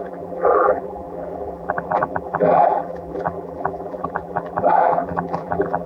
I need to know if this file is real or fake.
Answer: fake